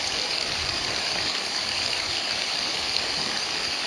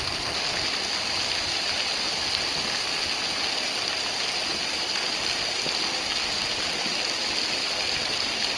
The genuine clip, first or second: second